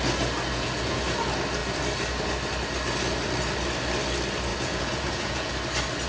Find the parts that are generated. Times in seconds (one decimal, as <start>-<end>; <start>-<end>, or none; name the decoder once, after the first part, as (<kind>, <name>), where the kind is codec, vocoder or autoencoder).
0.5-1.0 (vocoder, Vocos); 4.5-5.5